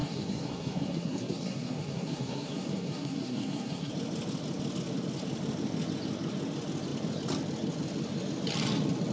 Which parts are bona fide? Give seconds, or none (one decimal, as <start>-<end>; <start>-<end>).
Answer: 3.9-9.1